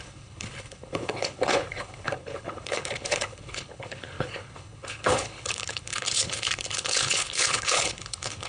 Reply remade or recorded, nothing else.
remade